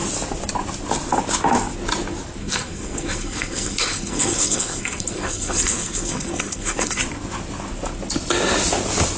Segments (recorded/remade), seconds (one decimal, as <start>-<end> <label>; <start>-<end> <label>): 0.0-2.4 recorded; 2.4-7.0 remade; 7.0-9.2 recorded